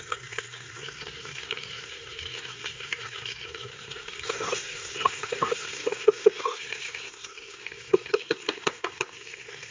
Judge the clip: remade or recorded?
remade